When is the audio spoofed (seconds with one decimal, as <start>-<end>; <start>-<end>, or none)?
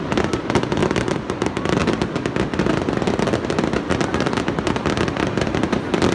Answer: 0.0-0.8; 1.4-1.8; 3.5-6.1